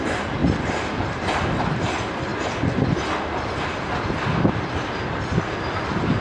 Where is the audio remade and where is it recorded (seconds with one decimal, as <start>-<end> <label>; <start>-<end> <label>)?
0.0-6.2 recorded